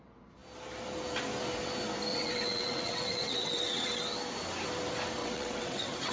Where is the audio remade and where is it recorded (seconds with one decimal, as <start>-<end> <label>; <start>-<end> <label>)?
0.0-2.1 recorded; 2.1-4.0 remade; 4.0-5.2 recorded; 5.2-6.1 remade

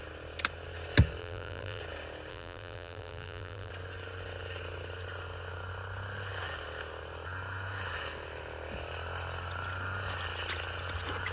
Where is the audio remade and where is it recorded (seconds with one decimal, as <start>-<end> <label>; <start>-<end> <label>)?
0.0-1.2 recorded; 1.2-1.8 remade; 1.8-2.3 recorded; 2.3-3.7 remade; 3.7-11.3 recorded

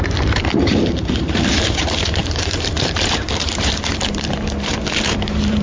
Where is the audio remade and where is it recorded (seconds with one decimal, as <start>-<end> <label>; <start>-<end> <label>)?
0.0-5.6 remade

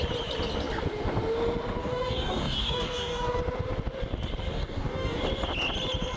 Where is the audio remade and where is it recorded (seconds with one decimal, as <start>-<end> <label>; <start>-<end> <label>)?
0.0-1.8 recorded; 1.8-3.4 remade; 3.4-4.5 recorded; 4.5-5.2 remade; 5.2-6.2 recorded